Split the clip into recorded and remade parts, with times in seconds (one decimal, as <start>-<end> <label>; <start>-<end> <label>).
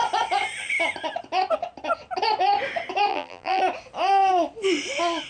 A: 0.0-3.1 recorded; 3.1-3.6 remade; 3.6-5.3 recorded